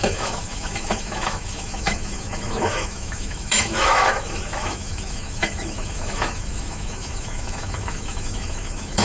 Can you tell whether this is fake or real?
fake